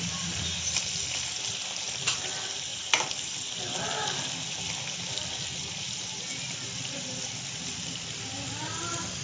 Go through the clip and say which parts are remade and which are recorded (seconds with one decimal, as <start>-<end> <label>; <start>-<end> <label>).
0.0-9.2 recorded